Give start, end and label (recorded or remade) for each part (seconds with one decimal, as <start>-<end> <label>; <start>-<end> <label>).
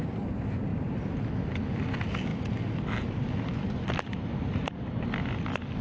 0.0-5.8 recorded